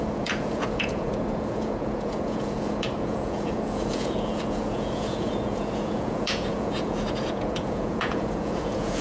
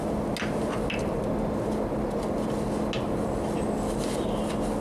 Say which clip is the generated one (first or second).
first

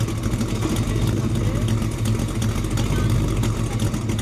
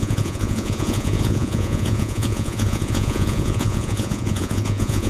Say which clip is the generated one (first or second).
second